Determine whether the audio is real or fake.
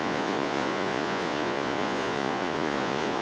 fake